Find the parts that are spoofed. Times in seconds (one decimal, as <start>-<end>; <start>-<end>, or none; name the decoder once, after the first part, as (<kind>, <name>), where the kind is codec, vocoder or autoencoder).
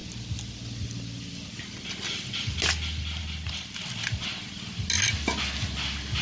none